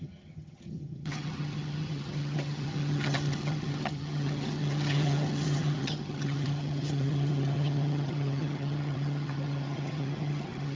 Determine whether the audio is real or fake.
fake